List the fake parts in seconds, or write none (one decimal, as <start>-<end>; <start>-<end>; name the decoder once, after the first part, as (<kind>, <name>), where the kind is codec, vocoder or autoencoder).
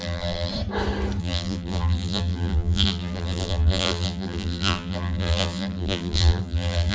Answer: 0.0-0.5 (vocoder, BigVGAN v2); 1.2-6.9